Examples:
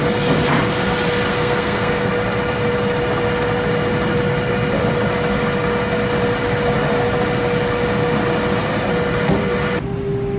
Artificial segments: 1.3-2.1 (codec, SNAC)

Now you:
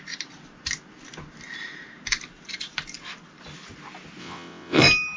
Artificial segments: 4.2-4.8 (vocoder, WaveNeXt)

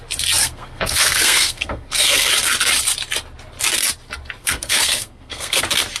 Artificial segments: 0.4-2.3 (codec, SNAC); 4.4-5.6

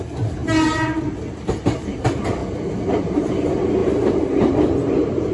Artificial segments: none

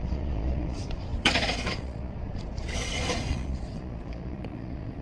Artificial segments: 0.0-5.0 (vocoder, Vocos)